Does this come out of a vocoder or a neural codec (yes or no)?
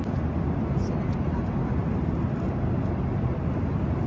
no